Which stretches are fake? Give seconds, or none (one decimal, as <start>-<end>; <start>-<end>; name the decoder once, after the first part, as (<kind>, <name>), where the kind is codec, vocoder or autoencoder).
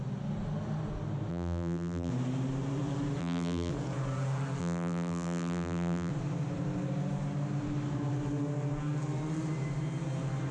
1.3-2.1 (vocoder, BigVGAN v2); 3.2-3.7; 4.6-6.1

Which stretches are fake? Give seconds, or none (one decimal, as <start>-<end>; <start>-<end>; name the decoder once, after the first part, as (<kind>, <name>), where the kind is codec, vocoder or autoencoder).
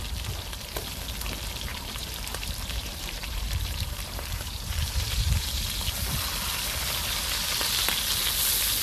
1.7-5.6 (vocoder, BigVGAN v2)